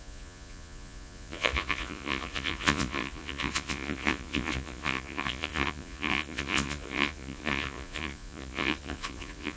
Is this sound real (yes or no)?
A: no